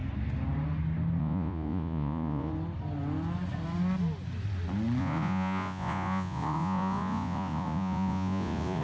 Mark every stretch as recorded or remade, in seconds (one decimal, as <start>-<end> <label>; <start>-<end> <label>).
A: 0.0-1.2 recorded; 1.2-2.5 remade; 2.5-5.0 recorded; 5.0-8.8 remade